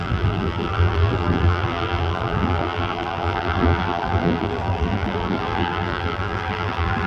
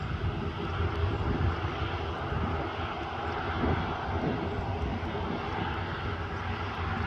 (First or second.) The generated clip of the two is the first